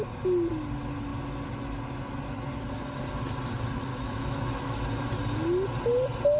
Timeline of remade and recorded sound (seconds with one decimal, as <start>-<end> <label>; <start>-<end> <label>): 0.0-3.9 recorded; 3.9-4.8 remade; 4.8-6.4 recorded